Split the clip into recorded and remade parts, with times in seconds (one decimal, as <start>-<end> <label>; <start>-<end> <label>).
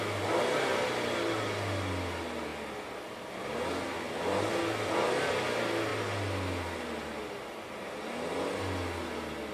0.0-9.5 recorded